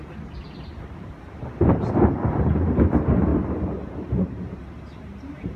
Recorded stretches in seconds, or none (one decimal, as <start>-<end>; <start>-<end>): 0.0-0.7; 2.9-3.3